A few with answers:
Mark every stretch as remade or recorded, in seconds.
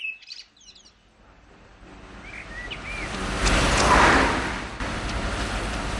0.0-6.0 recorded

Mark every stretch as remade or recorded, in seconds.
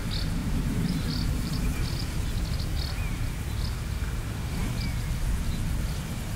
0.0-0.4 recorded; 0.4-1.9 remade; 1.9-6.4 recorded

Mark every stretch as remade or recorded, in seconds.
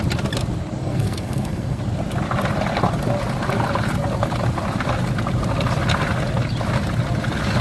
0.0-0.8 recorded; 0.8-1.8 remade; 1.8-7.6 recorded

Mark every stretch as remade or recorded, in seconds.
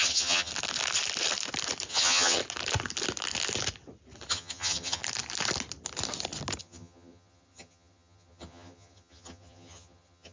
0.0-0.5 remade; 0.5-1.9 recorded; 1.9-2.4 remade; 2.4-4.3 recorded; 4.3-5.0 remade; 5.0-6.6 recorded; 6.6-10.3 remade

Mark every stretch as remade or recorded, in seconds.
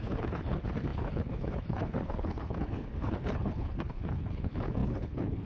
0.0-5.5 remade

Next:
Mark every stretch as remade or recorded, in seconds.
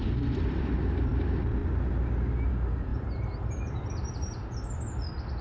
0.0-0.6 remade; 0.6-2.9 recorded; 2.9-5.4 remade